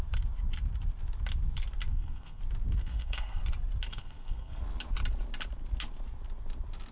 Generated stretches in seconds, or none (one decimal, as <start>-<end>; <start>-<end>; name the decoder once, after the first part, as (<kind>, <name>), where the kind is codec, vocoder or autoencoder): 1.9-2.4 (codec, SNAC); 2.8-3.4; 3.9-4.6